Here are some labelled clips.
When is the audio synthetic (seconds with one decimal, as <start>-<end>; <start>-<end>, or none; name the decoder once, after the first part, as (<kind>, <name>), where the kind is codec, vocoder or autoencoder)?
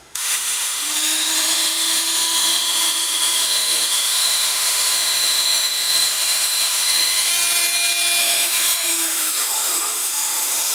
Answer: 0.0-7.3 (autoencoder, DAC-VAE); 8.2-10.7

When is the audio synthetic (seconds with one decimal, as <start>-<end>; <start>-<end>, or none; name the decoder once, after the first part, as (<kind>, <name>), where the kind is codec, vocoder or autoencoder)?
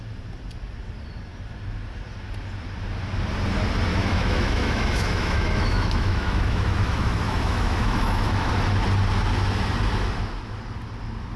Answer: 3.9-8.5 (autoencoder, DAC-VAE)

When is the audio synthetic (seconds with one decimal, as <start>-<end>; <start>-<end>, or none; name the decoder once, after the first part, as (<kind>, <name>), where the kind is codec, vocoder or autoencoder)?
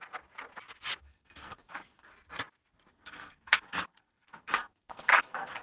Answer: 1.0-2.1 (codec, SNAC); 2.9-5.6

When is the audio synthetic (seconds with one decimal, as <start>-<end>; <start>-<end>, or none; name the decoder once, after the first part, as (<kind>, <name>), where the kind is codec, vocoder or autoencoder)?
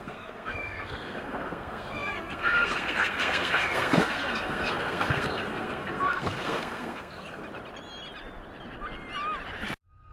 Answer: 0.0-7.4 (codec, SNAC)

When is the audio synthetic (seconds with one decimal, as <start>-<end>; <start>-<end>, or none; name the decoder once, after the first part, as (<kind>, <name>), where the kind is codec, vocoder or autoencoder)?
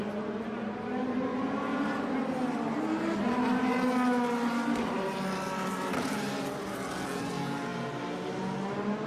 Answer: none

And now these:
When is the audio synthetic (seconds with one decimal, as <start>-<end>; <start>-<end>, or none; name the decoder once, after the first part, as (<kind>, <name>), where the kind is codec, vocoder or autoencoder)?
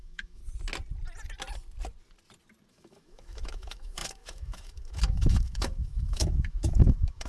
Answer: 0.0-0.4 (autoencoder, DAC-VAE); 2.7-7.3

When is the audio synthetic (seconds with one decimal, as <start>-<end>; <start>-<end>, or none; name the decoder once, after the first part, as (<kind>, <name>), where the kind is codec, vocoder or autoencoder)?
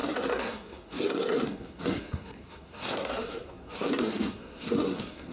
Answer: 0.0-5.3 (codec, SNAC)